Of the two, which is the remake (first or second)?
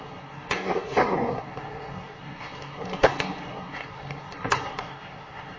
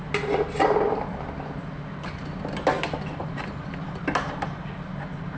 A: first